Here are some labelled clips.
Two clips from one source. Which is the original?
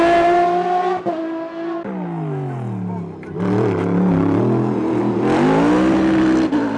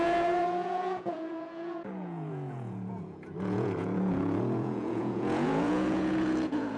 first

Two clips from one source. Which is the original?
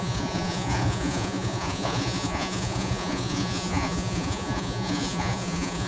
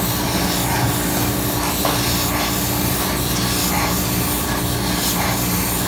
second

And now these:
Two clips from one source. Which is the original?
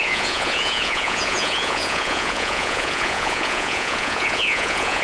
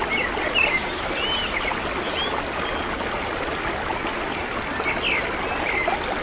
second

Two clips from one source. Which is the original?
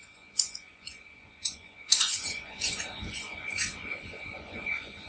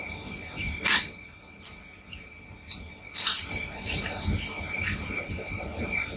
second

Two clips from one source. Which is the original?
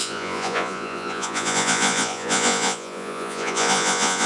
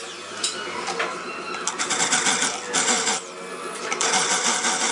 second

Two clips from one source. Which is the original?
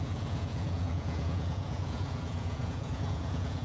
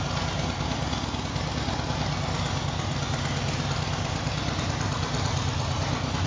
second